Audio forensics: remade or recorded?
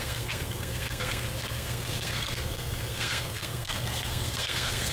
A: remade